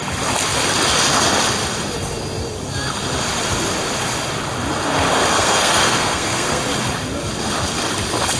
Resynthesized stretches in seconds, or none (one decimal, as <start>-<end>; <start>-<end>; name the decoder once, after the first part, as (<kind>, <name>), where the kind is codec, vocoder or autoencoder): 5.3-6.6 (codec, SNAC)